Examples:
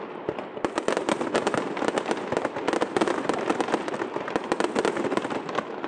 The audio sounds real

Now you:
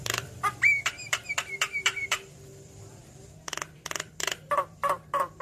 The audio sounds fake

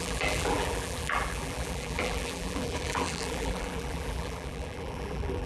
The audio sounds fake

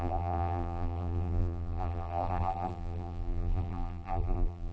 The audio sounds fake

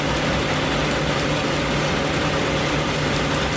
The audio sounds real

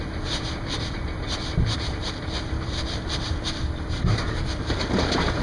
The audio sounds fake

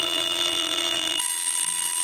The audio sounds fake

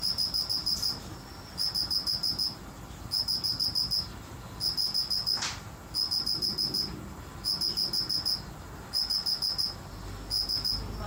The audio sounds real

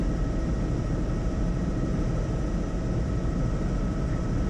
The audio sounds fake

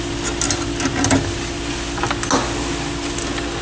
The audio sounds real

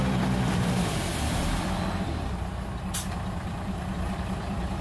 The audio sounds fake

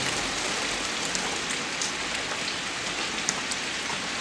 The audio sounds real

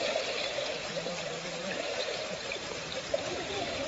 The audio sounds fake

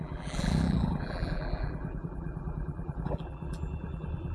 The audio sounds fake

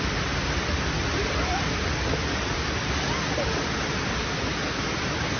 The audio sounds real